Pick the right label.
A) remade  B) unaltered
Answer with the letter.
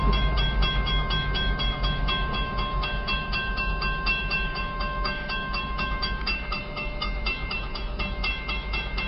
A